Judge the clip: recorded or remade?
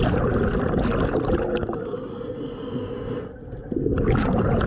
recorded